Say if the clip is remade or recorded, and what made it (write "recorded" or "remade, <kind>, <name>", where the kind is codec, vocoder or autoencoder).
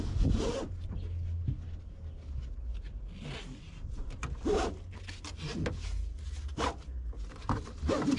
recorded